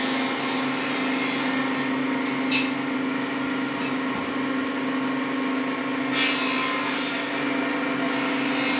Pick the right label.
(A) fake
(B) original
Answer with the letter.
B